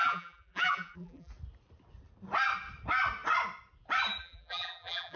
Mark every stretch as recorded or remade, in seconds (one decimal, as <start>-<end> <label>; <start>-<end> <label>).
0.0-1.3 remade; 1.3-4.2 recorded; 4.2-5.2 remade